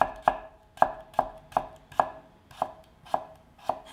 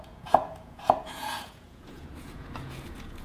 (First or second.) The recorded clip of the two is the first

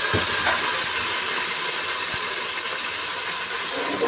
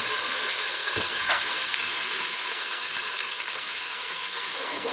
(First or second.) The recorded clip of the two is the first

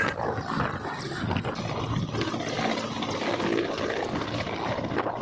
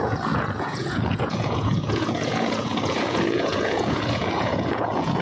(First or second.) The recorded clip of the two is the first